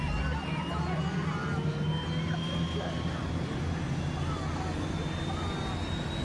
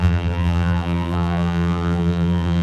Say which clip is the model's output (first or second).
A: second